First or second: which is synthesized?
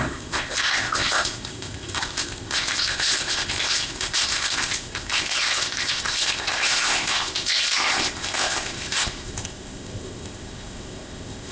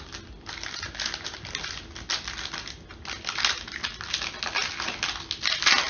first